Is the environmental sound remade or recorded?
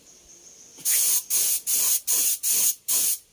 recorded